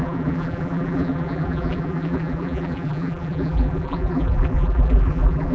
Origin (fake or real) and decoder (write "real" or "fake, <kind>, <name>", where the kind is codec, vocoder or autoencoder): fake, vocoder, BigVGAN v2